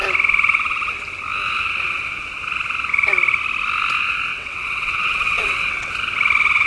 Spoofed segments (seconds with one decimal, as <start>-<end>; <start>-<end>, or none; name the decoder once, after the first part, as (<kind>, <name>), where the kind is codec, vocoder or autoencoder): 4.3-5.9 (vocoder, WaveNeXt)